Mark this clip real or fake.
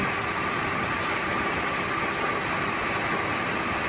real